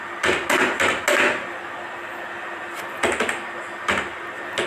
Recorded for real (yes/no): yes